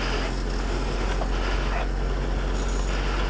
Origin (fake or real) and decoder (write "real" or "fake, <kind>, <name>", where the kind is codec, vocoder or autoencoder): real